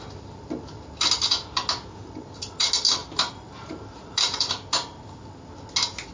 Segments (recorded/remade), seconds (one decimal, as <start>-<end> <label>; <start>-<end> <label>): 0.0-3.0 recorded; 3.0-4.5 remade; 4.5-6.1 recorded